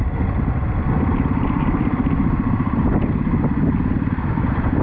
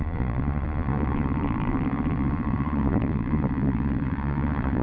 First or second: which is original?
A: first